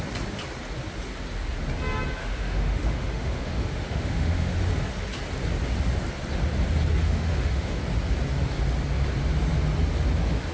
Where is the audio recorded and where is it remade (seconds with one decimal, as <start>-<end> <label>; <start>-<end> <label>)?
0.0-2.2 recorded; 2.2-4.5 remade; 4.5-7.0 recorded; 7.0-7.8 remade; 7.8-10.5 recorded